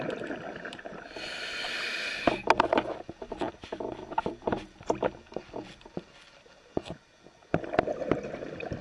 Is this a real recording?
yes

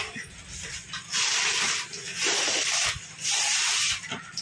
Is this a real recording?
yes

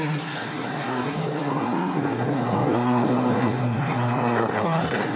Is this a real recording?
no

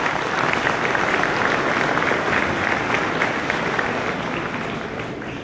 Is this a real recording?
yes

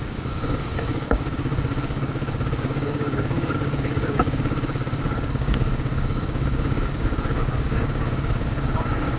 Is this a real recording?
no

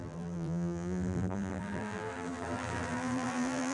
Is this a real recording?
no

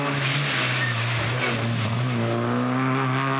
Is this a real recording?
yes